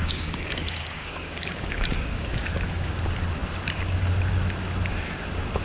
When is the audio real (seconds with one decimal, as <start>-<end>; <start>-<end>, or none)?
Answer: 3.0-5.6